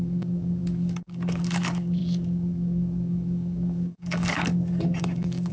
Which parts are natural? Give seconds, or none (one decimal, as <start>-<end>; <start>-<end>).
none